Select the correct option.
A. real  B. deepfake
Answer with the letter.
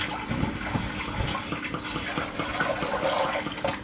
A